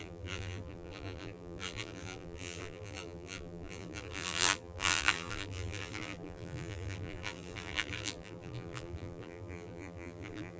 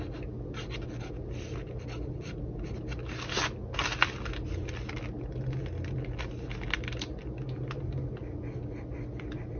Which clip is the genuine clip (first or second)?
second